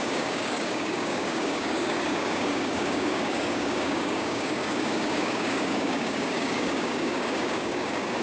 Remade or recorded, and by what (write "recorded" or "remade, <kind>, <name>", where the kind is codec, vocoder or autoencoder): remade, codec, DAC